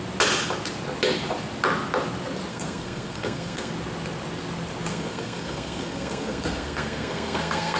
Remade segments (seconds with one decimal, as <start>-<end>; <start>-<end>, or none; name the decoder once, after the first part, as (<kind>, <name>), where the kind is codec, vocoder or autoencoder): 2.5-3.7 (codec, SNAC); 4.9-7.8